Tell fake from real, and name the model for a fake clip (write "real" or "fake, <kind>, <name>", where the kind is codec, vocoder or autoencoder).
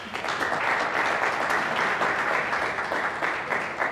real